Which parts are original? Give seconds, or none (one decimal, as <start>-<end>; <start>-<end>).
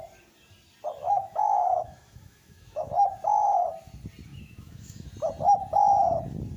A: 0.0-1.0; 2.9-4.3; 5.1-6.6